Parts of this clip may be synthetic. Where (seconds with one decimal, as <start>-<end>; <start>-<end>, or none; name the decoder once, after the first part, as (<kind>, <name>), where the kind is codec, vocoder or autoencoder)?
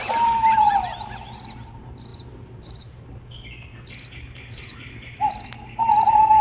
0.0-6.4 (vocoder, BigVGAN v2)